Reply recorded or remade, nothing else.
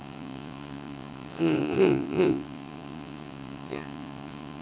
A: remade